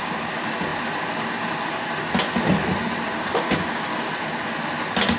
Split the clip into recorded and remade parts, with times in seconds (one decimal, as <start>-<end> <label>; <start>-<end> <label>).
0.0-3.3 recorded; 3.3-4.1 remade; 4.1-5.2 recorded